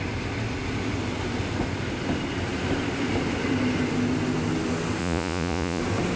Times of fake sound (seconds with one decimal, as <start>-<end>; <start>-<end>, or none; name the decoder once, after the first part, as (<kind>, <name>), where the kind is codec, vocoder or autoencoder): 5.0-5.8 (vocoder, Vocos)